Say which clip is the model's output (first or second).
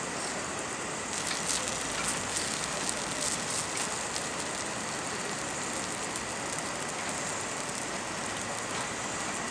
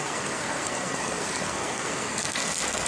second